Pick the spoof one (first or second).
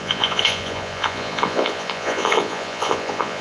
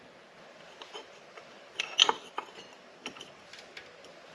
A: first